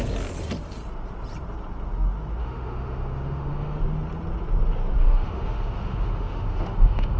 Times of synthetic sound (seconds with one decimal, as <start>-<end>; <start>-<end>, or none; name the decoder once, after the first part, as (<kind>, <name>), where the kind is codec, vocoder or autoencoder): 2.4-3.8 (autoencoder, DAC-VAE); 5.0-7.2

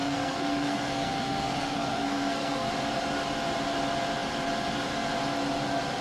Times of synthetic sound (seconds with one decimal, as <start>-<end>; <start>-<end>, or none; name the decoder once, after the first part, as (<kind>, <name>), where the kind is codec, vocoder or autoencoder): 0.0-2.7 (codec, SNAC)